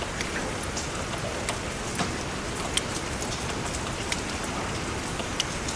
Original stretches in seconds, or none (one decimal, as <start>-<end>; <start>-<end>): 0.0-5.8